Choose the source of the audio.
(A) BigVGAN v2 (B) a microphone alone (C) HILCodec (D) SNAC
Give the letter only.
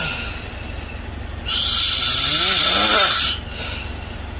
B